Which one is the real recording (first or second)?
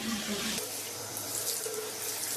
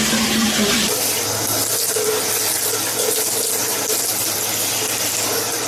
second